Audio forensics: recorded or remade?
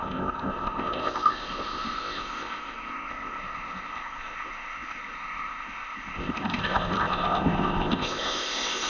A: remade